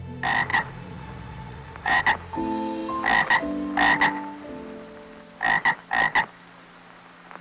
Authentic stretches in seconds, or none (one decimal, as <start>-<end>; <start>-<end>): 0.0-0.5; 2.0-7.4